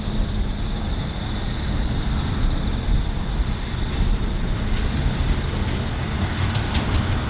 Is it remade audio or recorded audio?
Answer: recorded